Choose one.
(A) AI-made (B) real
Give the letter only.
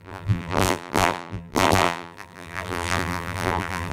A